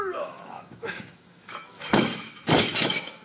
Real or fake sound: fake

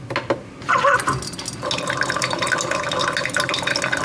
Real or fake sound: real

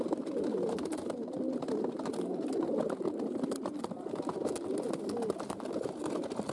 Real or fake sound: real